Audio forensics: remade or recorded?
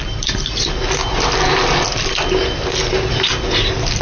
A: recorded